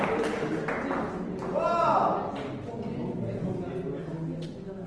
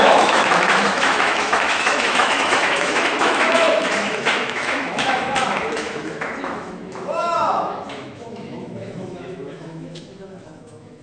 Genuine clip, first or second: first